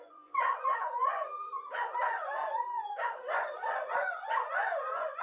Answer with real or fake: fake